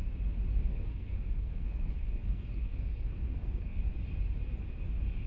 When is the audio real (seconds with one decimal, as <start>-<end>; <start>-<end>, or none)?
0.0-0.6; 3.8-5.3